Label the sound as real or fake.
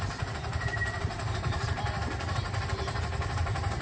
fake